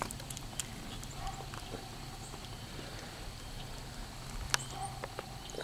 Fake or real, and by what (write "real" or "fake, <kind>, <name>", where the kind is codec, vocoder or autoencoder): real